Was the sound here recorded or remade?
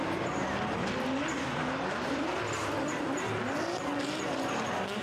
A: recorded